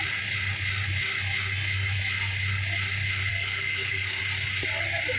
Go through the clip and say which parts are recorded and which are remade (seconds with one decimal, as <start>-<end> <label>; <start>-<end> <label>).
0.0-3.3 recorded; 3.3-4.2 remade; 4.2-5.2 recorded